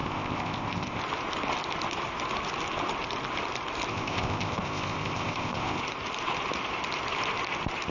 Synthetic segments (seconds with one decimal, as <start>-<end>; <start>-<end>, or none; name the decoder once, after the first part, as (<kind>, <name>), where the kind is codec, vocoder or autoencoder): 0.0-1.0 (codec, ZipCodec); 3.9-5.8